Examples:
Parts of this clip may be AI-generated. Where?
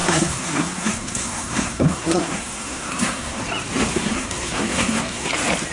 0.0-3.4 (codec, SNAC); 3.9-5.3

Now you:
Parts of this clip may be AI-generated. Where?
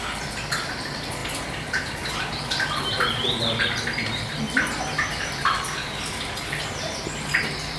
none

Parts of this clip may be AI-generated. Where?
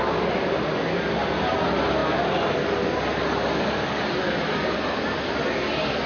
none